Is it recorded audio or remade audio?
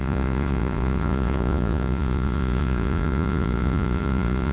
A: remade